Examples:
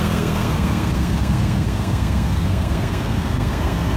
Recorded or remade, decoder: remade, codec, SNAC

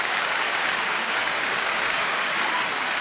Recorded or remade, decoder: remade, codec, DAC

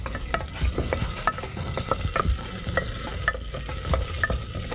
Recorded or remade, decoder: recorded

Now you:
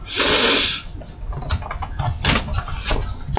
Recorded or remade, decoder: recorded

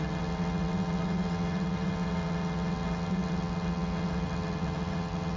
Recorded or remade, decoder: remade, vocoder, HiFi-GAN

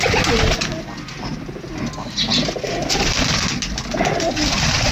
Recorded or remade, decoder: recorded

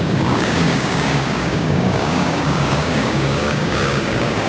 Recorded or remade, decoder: remade, codec, DAC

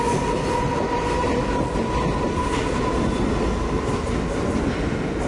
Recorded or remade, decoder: recorded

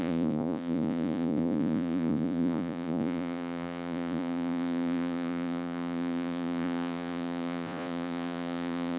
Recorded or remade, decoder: remade, vocoder, Vocos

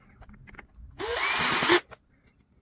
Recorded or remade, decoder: recorded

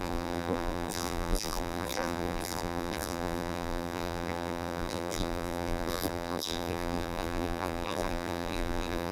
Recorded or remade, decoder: remade, vocoder, BigVGAN v2